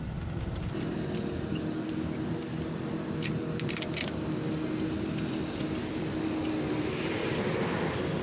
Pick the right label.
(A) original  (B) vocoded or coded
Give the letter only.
A